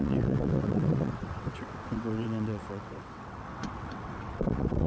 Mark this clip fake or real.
fake